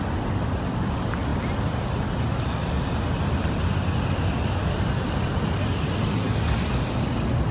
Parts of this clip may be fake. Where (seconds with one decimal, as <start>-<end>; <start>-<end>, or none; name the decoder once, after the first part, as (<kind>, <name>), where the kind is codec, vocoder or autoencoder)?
none